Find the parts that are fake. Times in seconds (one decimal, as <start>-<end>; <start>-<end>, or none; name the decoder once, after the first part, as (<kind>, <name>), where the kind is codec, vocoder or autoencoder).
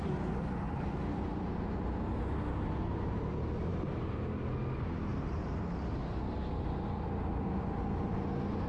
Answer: 3.7-4.2 (vocoder, BigVGAN v2); 5.1-5.6